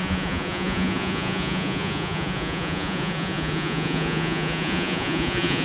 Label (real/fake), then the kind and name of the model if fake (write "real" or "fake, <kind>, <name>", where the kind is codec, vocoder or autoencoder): fake, vocoder, Vocos